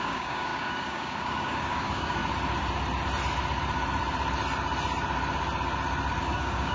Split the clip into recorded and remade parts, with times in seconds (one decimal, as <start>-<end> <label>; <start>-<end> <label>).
0.0-2.2 remade; 2.2-6.2 recorded; 6.2-6.7 remade